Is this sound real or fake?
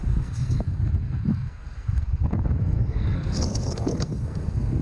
fake